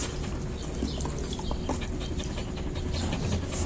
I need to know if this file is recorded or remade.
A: recorded